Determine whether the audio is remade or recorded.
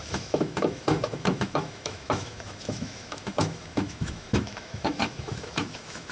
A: remade